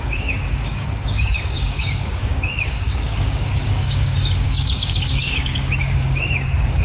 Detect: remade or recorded remade